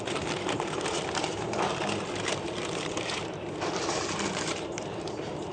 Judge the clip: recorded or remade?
remade